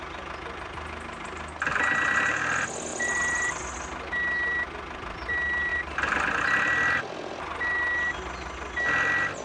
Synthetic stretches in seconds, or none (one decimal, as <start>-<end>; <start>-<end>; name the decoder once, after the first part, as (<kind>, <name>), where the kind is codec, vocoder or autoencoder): 2.9-3.6 (vocoder, BigVGAN v2); 5.7-7.0